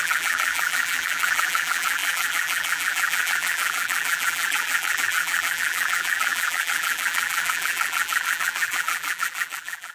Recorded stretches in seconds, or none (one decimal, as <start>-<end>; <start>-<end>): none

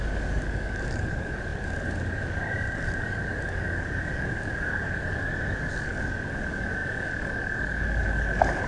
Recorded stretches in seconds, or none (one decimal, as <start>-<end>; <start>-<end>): none

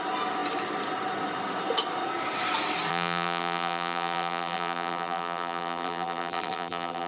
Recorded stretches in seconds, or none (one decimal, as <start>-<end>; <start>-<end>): 0.0-2.9

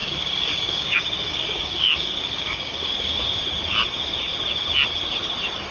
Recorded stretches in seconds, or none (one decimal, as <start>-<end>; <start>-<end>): 3.4-5.7